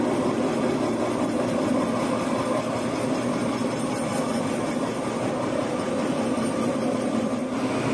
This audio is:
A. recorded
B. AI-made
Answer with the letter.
A